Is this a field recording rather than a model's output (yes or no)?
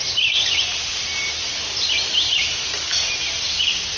yes